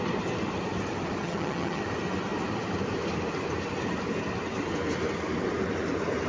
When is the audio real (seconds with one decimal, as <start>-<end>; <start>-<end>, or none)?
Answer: 0.0-1.2; 1.8-6.3